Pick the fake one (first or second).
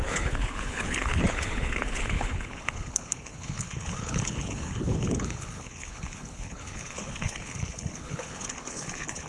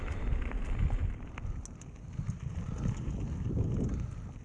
first